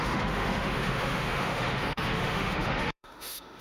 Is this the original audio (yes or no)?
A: no